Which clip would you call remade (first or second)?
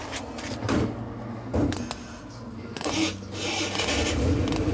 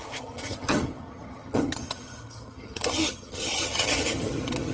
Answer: second